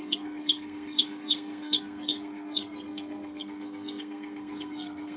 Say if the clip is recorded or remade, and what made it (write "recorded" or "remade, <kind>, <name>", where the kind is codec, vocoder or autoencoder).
remade, codec, SNAC